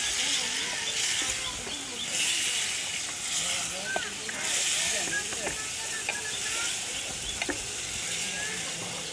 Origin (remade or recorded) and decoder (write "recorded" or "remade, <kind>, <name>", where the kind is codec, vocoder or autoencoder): recorded